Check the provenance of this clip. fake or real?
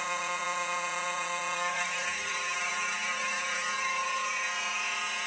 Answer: fake